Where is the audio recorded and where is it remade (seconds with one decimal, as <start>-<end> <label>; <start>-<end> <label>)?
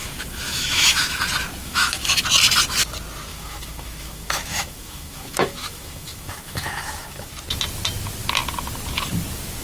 0.0-1.2 remade; 1.2-1.6 recorded; 1.6-2.2 remade; 2.2-3.3 recorded; 3.3-7.3 remade; 7.3-9.6 recorded